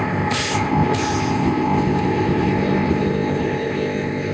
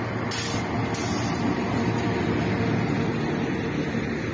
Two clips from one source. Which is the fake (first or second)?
first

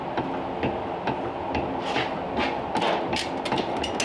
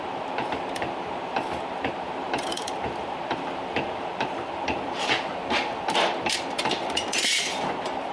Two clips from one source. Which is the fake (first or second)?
second